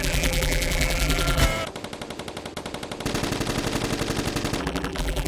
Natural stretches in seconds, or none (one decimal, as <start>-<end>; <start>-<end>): 1.4-4.6